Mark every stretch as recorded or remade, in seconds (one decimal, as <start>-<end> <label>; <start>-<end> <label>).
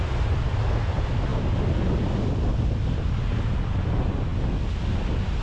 0.0-5.4 recorded